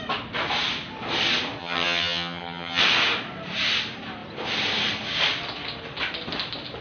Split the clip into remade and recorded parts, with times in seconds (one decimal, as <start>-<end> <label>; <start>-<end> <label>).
0.0-1.6 recorded; 1.6-2.8 remade; 2.8-6.8 recorded